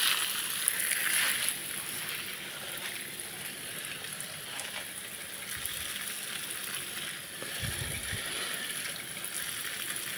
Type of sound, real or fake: real